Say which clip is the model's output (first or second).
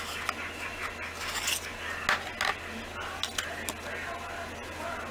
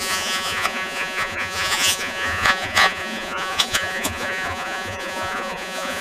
second